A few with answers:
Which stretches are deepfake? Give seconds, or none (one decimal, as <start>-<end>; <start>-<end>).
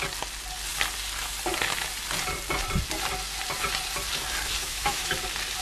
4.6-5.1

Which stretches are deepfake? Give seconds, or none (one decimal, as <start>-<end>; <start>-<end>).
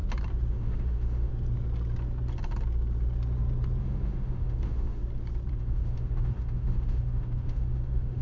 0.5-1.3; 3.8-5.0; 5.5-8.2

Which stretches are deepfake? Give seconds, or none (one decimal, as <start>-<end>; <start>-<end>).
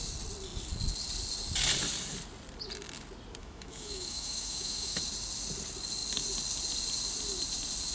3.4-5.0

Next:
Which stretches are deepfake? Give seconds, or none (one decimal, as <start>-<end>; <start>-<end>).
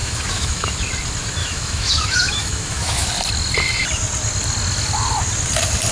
0.0-0.7; 1.4-3.1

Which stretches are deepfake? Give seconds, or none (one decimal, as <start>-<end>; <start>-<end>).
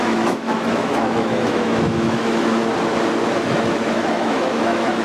0.0-2.6; 3.4-5.0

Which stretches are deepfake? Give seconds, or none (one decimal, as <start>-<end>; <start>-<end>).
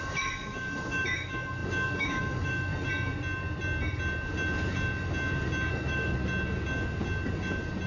0.0-2.7; 5.7-6.2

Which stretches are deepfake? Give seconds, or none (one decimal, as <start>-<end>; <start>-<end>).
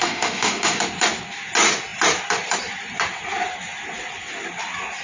0.0-0.8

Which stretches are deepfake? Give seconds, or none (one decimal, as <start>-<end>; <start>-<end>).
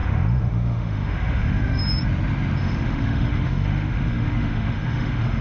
0.0-1.8; 2.6-5.4